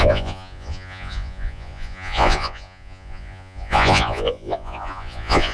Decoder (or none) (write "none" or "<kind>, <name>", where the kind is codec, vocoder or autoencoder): vocoder, Vocos